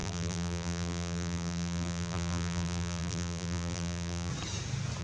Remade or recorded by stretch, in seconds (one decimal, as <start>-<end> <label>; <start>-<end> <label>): 0.0-4.3 remade; 4.3-5.0 recorded